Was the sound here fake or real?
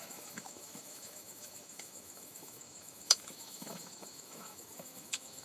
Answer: fake